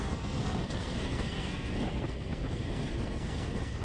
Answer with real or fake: fake